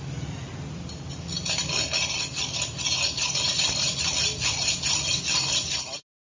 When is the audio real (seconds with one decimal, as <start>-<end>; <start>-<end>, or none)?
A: 0.0-6.3